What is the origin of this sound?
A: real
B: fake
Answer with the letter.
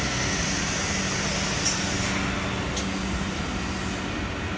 A